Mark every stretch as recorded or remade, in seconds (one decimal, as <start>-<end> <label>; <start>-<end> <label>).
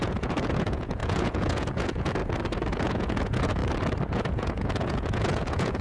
0.0-2.2 remade; 2.2-2.7 recorded; 2.7-3.6 remade; 3.6-4.1 recorded; 4.1-5.8 remade